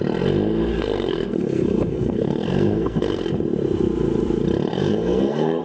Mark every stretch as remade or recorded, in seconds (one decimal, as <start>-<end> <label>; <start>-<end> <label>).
0.0-0.7 recorded; 0.7-3.2 remade; 3.2-4.7 recorded; 4.7-5.6 remade